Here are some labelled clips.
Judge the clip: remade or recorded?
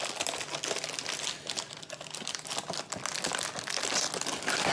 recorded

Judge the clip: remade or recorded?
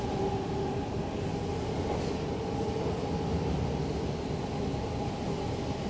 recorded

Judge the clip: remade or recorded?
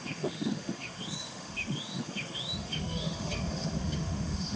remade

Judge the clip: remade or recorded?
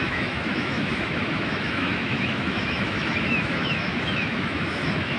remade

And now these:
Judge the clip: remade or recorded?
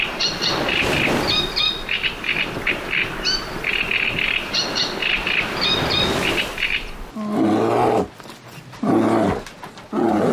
recorded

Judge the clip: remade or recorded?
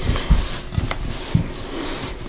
recorded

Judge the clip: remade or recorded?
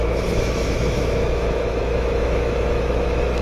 remade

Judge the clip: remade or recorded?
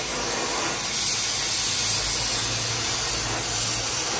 recorded